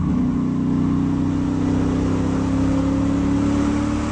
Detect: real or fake real